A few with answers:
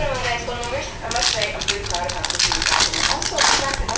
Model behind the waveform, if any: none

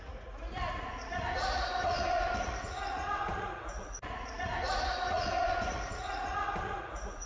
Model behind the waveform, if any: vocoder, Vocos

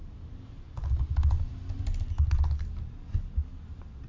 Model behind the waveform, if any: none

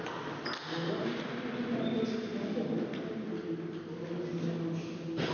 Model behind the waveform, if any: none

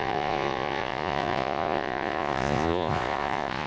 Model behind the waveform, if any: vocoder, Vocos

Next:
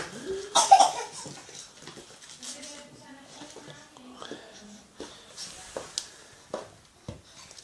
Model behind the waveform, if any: none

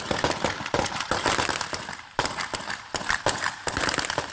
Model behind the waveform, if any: none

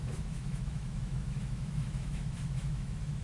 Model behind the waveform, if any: autoencoder, DAC-VAE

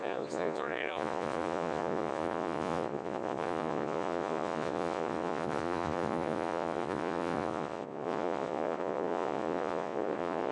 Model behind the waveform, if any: vocoder, Vocos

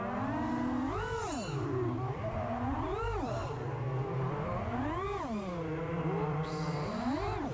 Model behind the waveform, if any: none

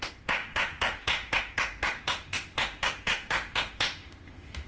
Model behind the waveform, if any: autoencoder, DAC-VAE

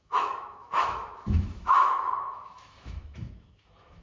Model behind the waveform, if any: autoencoder, DAC-VAE